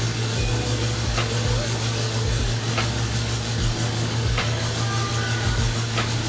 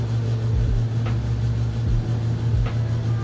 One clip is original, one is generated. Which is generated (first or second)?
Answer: first